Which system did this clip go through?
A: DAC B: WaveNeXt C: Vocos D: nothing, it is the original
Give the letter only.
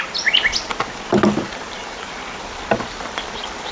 D